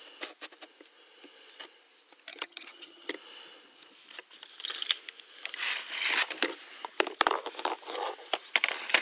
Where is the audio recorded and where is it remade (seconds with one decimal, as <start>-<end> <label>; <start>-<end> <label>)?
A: 0.0-2.3 recorded; 2.3-3.1 remade; 3.1-9.0 recorded